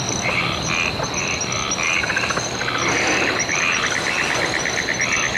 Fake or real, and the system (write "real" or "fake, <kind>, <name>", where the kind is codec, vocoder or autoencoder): real